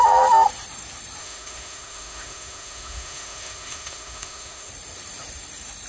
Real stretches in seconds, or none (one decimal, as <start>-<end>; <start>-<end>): 0.0-1.2; 4.7-5.9